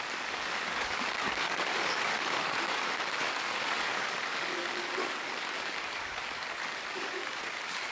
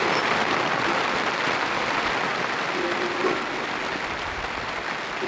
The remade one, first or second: first